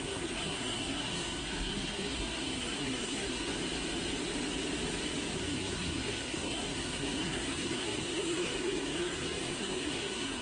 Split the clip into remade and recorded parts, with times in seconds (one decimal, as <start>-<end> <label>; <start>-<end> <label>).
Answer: 0.0-3.5 remade; 3.5-5.3 recorded; 5.3-10.4 remade